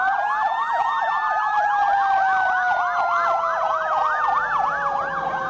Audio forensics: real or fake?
real